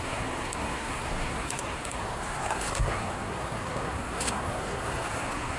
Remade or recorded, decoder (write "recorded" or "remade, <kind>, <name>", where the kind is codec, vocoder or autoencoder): remade, codec, SNAC